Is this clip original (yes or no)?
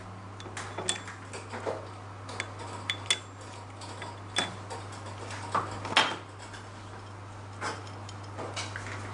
yes